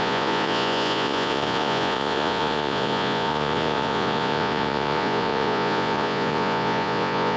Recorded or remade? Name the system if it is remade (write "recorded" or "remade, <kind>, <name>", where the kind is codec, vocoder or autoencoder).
remade, vocoder, Vocos